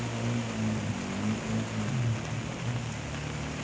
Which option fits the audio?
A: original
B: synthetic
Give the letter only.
A